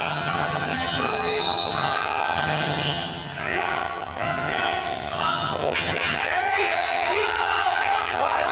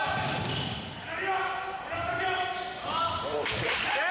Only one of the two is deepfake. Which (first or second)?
first